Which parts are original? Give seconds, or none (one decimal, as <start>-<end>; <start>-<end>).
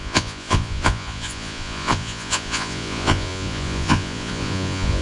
none